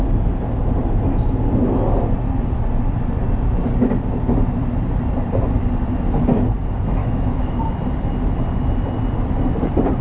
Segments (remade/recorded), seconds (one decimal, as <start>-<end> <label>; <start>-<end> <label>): 0.0-7.0 recorded; 7.0-7.6 remade; 7.6-10.0 recorded